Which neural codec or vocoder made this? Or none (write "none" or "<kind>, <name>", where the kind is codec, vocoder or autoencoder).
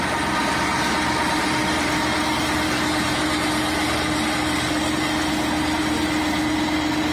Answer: none